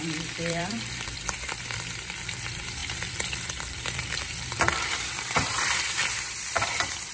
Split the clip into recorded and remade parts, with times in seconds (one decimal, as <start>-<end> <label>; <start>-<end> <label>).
0.0-7.1 remade